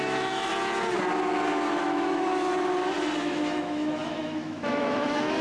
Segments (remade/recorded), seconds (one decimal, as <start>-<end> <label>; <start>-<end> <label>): 0.0-0.5 remade; 0.5-1.8 recorded; 1.8-2.3 remade; 2.3-3.2 recorded; 3.2-5.4 remade